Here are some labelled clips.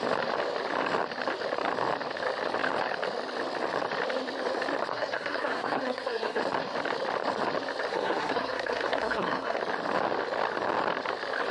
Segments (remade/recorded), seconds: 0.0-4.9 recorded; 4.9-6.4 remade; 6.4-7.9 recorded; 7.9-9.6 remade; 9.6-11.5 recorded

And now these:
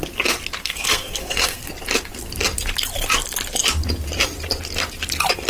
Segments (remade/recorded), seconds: 0.0-0.6 recorded; 0.6-1.7 remade; 1.7-5.5 recorded